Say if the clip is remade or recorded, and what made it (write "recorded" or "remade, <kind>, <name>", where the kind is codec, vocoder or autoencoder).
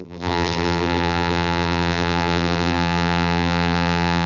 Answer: remade, vocoder, BigVGAN v2